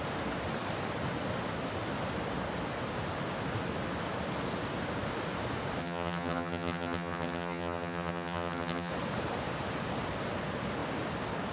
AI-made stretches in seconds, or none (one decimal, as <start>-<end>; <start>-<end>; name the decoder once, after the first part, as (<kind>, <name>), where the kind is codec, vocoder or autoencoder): 5.8-8.9 (vocoder, HiFi-GAN)